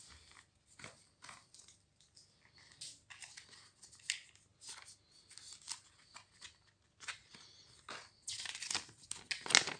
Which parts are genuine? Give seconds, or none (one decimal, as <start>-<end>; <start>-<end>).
0.0-9.8